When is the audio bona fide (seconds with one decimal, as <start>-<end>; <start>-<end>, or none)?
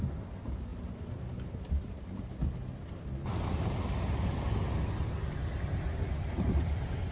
0.0-7.1